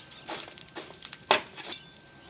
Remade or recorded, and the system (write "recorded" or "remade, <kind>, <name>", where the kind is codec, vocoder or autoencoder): recorded